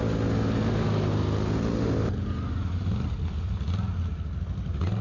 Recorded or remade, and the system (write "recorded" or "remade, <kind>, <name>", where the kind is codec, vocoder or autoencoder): recorded